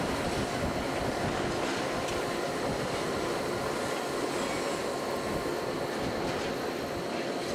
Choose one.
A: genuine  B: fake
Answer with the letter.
A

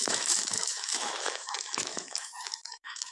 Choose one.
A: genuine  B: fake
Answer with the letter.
B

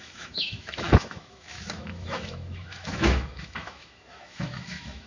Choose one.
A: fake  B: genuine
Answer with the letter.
A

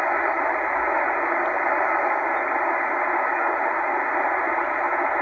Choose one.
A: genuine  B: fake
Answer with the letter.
A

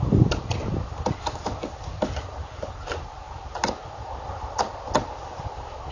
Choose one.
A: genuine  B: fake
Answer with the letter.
A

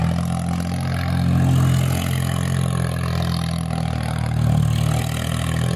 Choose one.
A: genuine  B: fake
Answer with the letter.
A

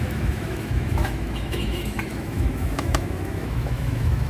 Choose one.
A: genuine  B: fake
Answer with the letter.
B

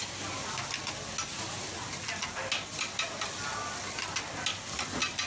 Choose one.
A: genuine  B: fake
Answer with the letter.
A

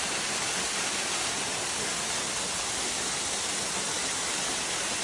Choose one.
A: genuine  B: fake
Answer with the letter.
A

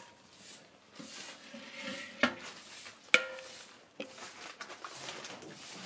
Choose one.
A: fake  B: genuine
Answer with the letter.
B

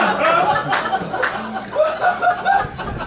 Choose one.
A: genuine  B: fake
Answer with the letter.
A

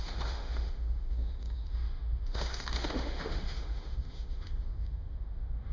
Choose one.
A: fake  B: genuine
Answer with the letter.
A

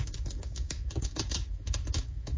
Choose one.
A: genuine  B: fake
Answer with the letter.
B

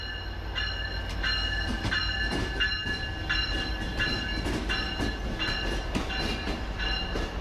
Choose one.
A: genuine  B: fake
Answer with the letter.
A